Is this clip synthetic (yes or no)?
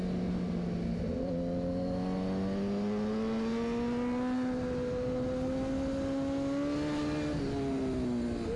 no